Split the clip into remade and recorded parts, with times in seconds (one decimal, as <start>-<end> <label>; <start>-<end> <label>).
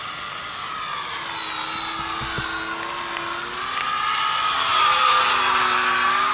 0.0-4.7 recorded; 4.7-5.2 remade; 5.2-6.3 recorded